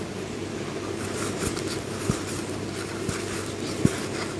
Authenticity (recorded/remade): recorded